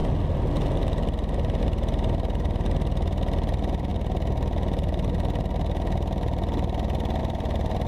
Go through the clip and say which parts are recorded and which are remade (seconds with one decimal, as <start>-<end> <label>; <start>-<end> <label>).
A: 0.0-1.6 recorded; 1.6-3.9 remade; 3.9-7.2 recorded; 7.2-7.9 remade